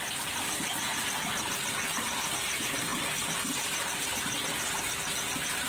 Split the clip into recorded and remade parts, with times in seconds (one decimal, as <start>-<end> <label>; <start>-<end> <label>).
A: 0.0-5.7 recorded